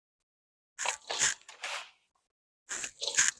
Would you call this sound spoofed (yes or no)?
no